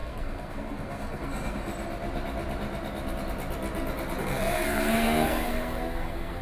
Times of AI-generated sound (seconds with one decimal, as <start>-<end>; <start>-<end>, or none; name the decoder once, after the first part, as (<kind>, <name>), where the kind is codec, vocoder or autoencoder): 0.0-1.7 (codec, SNAC); 4.2-6.4

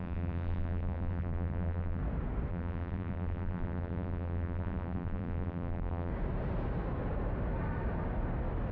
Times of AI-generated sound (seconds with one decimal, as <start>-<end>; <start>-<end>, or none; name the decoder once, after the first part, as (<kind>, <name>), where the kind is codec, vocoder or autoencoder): 0.0-2.0 (vocoder, BigVGAN v2); 2.5-6.1